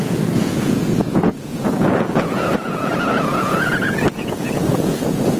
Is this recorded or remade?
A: remade